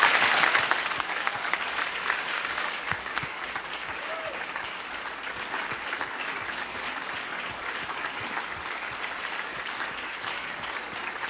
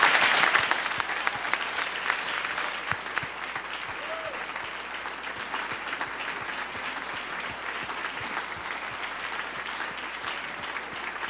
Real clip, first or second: second